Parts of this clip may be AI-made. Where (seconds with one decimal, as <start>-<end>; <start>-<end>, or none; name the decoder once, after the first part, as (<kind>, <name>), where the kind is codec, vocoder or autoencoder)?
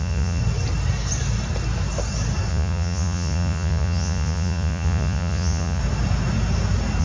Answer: 0.0-0.4 (vocoder, Vocos); 2.5-5.8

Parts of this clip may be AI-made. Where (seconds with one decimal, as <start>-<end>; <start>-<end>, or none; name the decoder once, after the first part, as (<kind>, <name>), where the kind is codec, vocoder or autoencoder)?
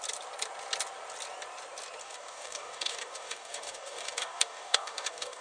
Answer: 2.0-5.4 (codec, DAC)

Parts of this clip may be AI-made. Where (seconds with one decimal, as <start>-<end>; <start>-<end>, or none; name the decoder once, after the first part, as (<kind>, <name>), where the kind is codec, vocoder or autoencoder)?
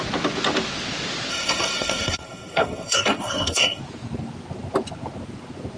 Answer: 1.3-3.8 (codec, SNAC)